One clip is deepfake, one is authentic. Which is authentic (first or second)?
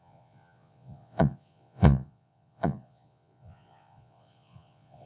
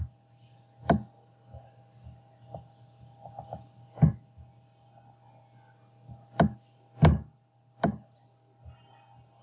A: second